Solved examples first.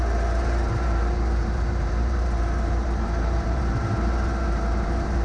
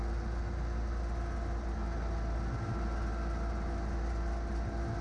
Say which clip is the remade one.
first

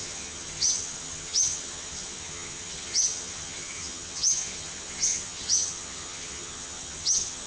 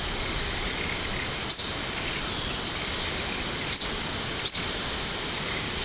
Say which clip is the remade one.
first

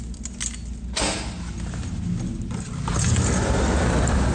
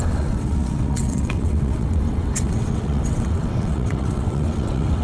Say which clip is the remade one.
second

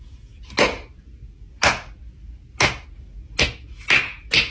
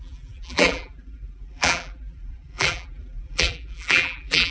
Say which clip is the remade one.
second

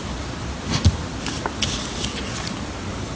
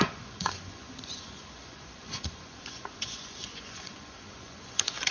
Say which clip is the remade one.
second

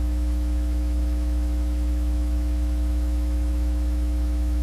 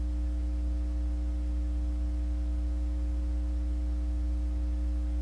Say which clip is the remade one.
first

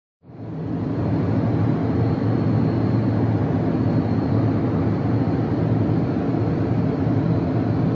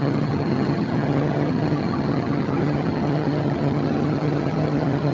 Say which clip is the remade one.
second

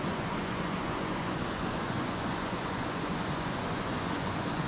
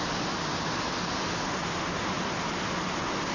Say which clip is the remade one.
first